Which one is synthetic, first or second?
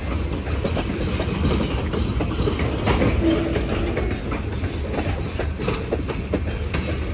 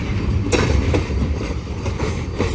second